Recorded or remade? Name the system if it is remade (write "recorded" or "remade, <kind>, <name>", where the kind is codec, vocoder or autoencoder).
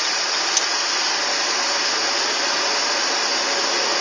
recorded